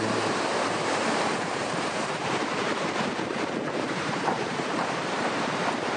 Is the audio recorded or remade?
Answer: remade